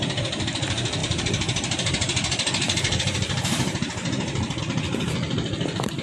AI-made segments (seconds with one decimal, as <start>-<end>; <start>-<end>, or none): 1.0-4.6